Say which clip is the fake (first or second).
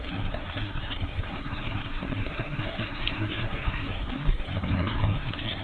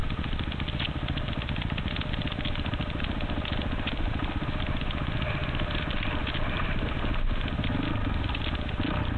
first